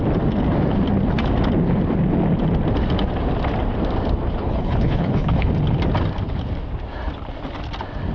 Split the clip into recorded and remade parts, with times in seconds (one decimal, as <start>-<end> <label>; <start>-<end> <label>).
0.0-4.4 recorded; 4.4-5.5 remade; 5.5-8.1 recorded